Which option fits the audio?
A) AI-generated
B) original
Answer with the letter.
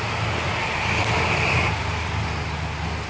B